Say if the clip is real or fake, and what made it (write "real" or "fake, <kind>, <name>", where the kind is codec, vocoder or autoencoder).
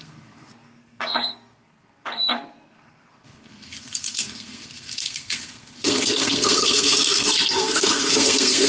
fake, codec, SNAC